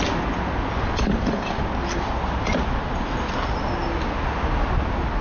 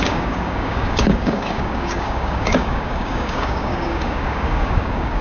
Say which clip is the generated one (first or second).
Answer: second